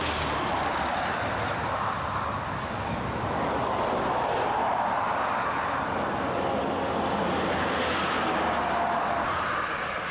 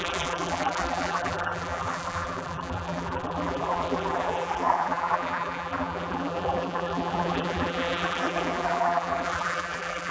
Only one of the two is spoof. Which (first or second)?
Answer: second